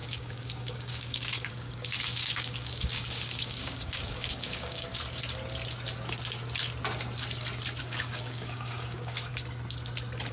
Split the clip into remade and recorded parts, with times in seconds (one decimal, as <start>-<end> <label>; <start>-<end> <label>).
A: 0.0-4.9 remade; 4.9-7.8 recorded; 7.8-9.3 remade; 9.3-10.3 recorded